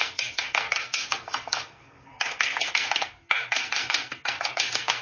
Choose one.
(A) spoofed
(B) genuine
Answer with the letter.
A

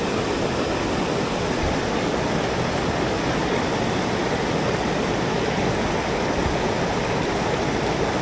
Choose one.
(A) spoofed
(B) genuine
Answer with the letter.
B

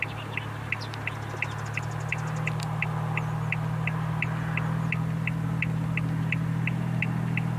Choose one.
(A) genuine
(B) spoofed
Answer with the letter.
A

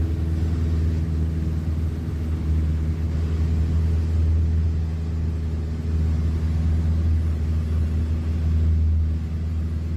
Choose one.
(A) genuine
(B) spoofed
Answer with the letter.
A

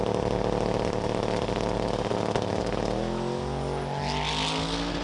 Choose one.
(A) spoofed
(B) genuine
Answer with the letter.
B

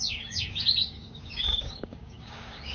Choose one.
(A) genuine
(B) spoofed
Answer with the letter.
B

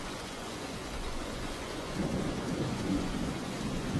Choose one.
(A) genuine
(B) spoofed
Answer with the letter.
B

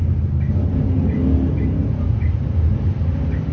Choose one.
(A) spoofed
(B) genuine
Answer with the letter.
B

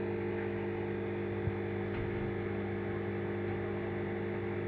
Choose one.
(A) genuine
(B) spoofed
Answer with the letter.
A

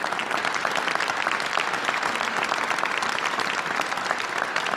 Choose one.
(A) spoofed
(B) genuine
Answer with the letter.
B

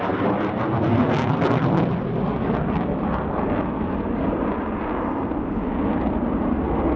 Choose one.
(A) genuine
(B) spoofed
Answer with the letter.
A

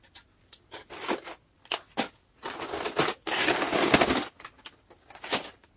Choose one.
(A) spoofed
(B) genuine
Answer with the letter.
B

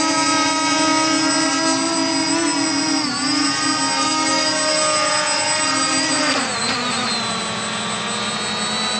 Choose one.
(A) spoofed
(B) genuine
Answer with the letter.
B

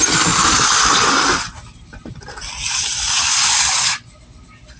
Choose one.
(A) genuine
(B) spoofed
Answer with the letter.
A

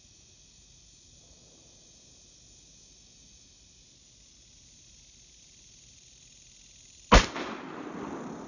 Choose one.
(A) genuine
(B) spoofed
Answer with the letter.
A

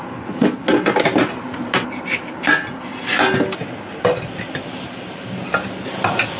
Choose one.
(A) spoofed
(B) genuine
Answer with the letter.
B